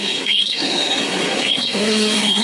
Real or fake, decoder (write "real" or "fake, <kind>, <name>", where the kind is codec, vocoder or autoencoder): fake, codec, SNAC